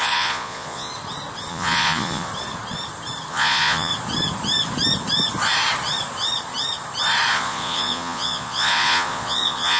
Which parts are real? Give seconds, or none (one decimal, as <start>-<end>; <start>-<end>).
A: 0.9-1.5; 2.3-3.3; 3.9-7.3